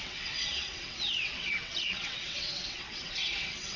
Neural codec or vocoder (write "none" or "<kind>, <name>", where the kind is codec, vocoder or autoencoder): vocoder, WaveNeXt